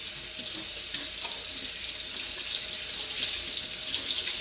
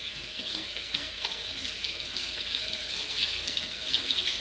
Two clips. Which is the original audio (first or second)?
first